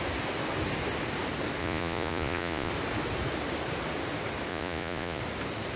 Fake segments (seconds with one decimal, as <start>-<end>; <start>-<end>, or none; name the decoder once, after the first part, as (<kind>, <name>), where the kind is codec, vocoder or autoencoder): 1.6-2.7 (vocoder, Vocos); 4.5-5.2

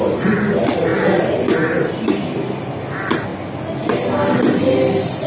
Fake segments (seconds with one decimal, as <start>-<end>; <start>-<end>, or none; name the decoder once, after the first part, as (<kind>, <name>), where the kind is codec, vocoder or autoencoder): none

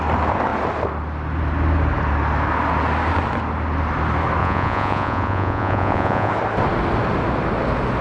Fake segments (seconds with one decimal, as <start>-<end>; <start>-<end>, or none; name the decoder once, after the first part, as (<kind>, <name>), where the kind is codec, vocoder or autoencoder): 4.4-6.3 (vocoder, Vocos)

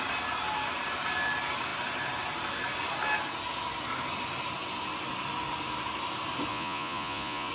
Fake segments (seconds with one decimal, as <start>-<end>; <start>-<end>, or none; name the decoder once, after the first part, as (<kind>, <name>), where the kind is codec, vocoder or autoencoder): 6.5-7.5 (vocoder, Vocos)

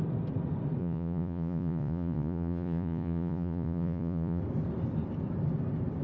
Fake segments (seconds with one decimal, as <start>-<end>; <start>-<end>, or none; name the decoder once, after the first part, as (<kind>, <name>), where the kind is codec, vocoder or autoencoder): 0.8-4.4 (vocoder, Vocos)

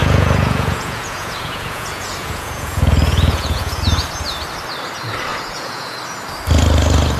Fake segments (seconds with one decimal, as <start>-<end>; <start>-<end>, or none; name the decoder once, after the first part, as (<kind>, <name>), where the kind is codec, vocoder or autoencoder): 0.0-3.8 (vocoder, Vocos); 5.3-6.0

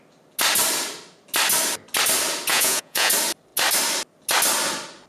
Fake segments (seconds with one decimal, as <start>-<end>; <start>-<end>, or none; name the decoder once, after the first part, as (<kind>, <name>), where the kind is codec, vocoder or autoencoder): 2.5-3.1 (vocoder, Vocos)

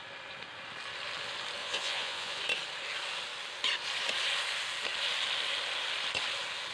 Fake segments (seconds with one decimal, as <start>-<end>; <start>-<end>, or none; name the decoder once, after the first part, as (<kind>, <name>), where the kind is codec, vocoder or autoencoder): 1.6-2.4 (vocoder, Vocos)